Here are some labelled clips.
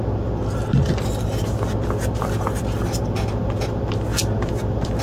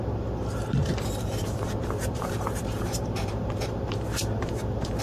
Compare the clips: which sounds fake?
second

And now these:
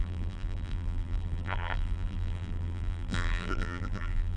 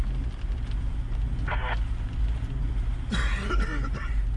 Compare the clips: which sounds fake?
first